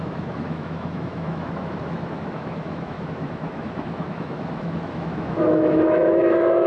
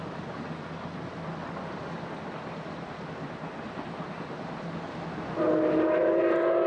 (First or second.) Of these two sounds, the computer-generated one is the first